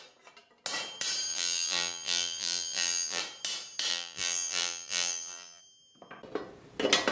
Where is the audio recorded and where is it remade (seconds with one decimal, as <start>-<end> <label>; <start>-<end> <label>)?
0.0-1.3 recorded; 1.3-3.2 remade; 3.2-3.9 recorded; 3.9-5.6 remade; 5.6-7.1 recorded